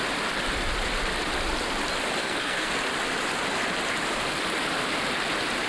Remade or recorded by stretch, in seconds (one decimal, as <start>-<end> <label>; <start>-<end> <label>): 0.0-2.2 recorded; 2.2-2.7 remade; 2.7-5.7 recorded